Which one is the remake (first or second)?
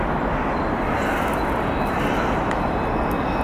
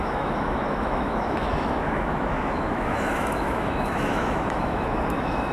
second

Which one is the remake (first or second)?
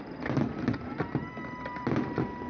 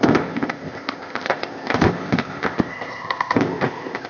second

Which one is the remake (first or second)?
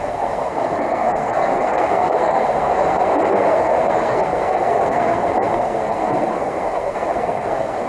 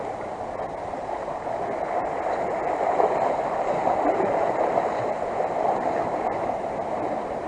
first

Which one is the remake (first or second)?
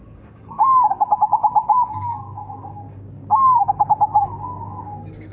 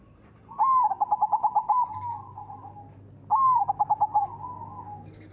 first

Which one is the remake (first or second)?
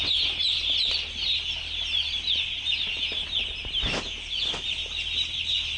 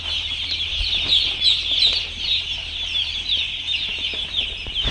second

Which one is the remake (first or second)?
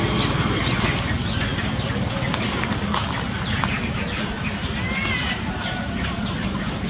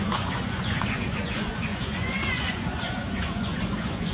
second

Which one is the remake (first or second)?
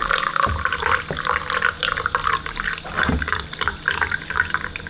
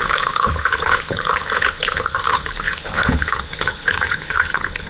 second